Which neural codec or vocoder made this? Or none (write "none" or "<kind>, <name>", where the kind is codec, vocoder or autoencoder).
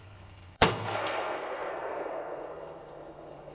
codec, SNAC